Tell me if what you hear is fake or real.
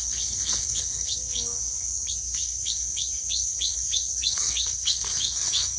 fake